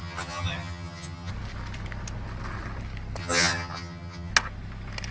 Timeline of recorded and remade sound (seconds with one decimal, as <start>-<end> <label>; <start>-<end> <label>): 0.0-1.3 remade; 1.3-3.2 recorded; 3.2-4.3 remade; 4.3-5.1 recorded